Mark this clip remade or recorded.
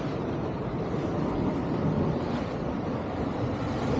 recorded